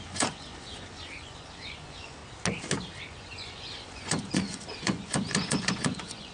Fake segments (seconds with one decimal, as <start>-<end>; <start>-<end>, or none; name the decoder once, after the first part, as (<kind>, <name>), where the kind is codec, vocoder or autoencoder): 0.0-2.2 (vocoder, Vocos); 3.0-6.3